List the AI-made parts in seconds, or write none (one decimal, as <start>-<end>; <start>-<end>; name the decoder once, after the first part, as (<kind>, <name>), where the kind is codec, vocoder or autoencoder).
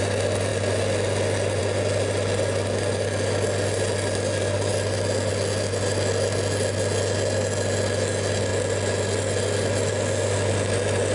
none